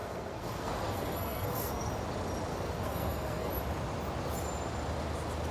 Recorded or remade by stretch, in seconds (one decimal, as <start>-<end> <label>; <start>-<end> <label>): 0.0-1.9 remade; 1.9-2.5 recorded; 2.5-3.5 remade; 3.5-5.5 recorded